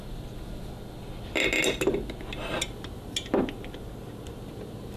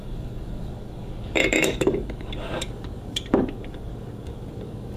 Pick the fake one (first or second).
second